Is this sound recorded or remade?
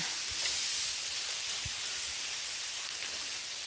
recorded